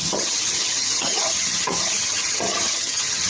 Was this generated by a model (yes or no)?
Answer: yes